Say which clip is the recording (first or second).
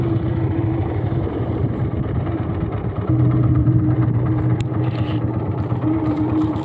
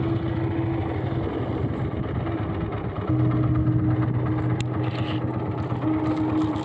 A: second